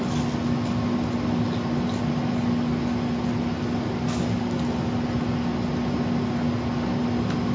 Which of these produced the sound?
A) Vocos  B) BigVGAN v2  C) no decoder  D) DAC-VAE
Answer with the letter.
C